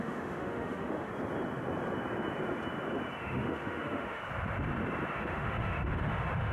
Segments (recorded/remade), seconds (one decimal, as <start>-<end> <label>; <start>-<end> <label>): 0.0-1.1 remade; 1.1-3.2 recorded; 3.2-4.2 remade; 4.2-5.1 recorded; 5.1-6.5 remade

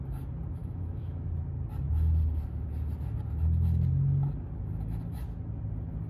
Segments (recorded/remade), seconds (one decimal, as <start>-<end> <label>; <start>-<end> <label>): 0.0-0.6 recorded; 0.6-1.3 remade; 1.3-6.1 recorded

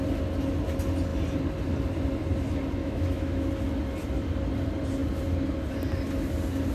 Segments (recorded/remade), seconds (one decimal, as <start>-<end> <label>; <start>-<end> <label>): 0.0-2.8 recorded; 2.8-3.5 remade; 3.5-6.7 recorded

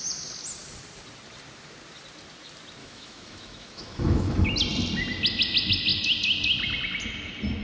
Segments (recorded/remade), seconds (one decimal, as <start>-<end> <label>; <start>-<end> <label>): 0.0-2.8 recorded; 2.8-4.5 remade; 4.5-7.6 recorded

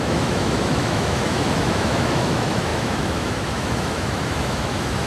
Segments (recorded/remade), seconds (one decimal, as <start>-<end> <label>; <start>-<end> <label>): 0.0-5.1 remade

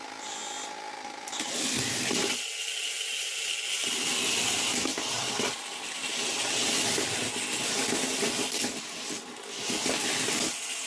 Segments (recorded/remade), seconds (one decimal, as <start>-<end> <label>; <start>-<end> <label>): 0.0-10.9 recorded